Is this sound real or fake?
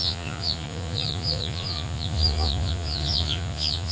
fake